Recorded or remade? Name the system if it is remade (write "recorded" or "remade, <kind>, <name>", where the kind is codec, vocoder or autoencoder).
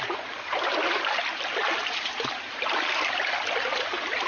recorded